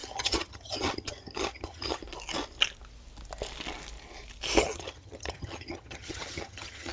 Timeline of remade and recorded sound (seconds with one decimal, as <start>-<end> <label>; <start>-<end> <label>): 0.0-2.0 remade; 2.0-4.6 recorded; 4.6-6.9 remade